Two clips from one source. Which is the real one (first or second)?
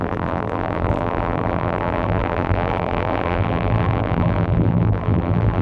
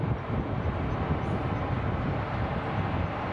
second